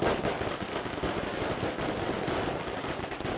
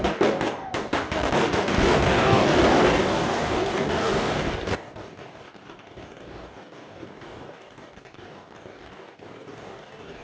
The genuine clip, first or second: first